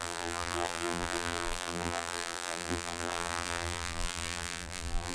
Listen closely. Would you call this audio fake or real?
fake